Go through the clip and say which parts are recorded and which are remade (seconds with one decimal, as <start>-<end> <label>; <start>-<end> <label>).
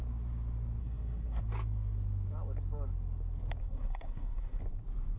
0.0-0.8 recorded; 0.8-1.4 remade; 1.4-3.6 recorded; 3.6-4.6 remade; 4.6-5.2 recorded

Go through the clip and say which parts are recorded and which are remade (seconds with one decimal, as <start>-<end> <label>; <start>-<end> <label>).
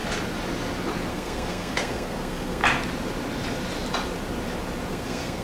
0.0-1.1 recorded; 1.1-2.6 remade; 2.6-4.9 recorded; 4.9-5.4 remade